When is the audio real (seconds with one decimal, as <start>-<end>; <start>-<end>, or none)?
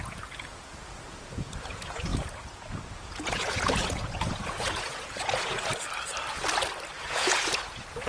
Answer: 5.7-7.0